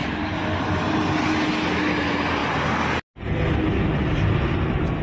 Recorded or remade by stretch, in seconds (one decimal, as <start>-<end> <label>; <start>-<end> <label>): 0.0-0.8 remade; 0.8-5.0 recorded